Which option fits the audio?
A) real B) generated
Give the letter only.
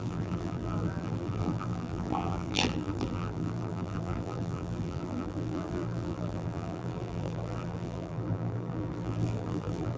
B